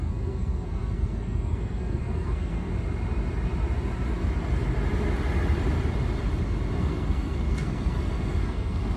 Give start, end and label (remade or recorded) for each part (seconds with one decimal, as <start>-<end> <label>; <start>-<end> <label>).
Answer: 0.0-2.7 remade; 2.7-6.8 recorded; 6.8-9.0 remade